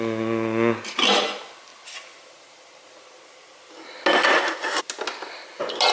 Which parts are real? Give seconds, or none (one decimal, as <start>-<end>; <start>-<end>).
0.0-5.9